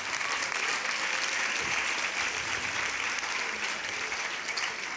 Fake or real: real